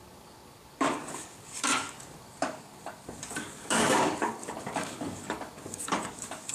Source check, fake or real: fake